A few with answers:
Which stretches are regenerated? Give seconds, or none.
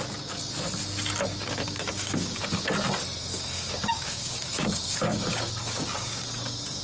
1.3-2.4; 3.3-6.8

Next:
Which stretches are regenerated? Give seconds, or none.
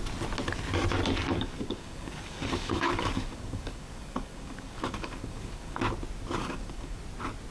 1.3-5.8; 6.4-7.0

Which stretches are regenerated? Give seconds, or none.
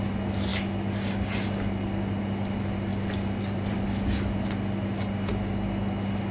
none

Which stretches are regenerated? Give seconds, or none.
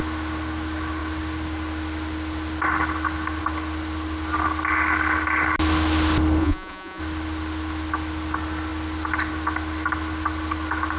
6.4-7.0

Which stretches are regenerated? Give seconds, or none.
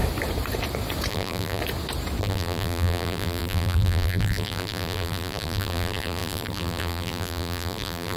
1.1-1.6; 2.2-8.2